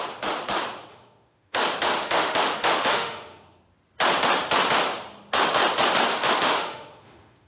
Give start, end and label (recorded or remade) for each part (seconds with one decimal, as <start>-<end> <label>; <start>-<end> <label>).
0.0-0.9 recorded; 0.9-1.6 remade; 1.6-2.0 recorded; 2.0-3.6 remade; 3.6-6.1 recorded; 6.1-7.5 remade